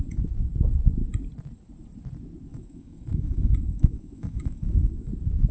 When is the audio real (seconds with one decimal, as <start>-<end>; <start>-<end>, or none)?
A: 0.0-2.5; 5.1-5.5